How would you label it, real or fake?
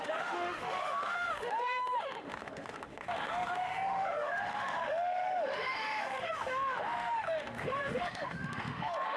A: fake